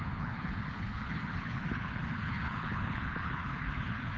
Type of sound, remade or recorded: remade